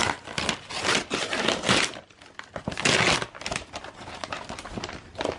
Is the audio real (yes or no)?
yes